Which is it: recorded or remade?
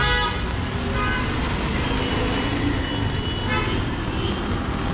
recorded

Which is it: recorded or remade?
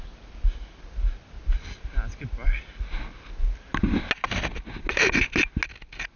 recorded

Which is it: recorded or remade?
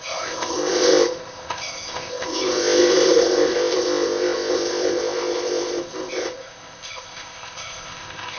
remade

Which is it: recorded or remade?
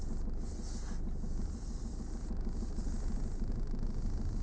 recorded